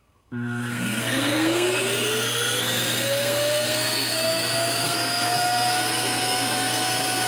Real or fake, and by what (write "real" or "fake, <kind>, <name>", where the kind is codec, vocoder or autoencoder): fake, codec, SNAC